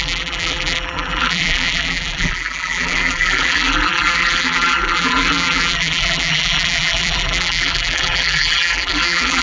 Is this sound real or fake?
fake